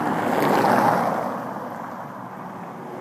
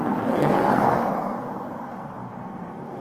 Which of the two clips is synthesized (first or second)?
second